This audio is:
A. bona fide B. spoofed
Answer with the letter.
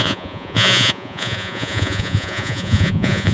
B